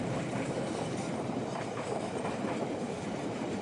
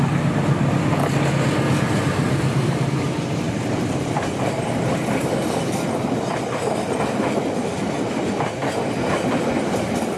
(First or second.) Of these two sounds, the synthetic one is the first